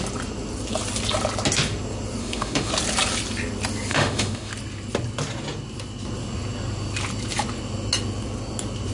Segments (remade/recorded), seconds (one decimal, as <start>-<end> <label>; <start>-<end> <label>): 0.0-2.2 recorded; 2.2-2.7 remade; 2.7-3.9 recorded; 3.9-4.5 remade; 4.5-8.9 recorded